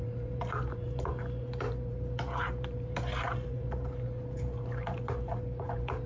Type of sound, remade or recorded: remade